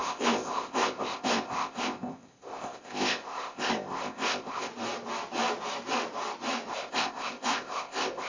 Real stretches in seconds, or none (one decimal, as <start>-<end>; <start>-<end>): 4.7-6.7